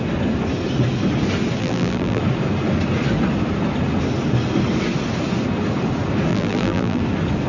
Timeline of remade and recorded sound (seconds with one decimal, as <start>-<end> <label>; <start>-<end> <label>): 0.0-1.6 recorded; 1.6-2.2 remade; 2.2-6.3 recorded; 6.3-7.0 remade; 7.0-7.5 recorded